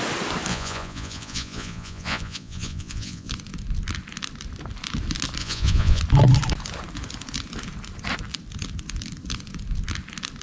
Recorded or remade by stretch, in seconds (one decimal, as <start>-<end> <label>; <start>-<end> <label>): 0.0-0.5 recorded; 0.5-3.3 remade; 3.3-5.4 recorded; 5.4-6.0 remade; 6.0-10.4 recorded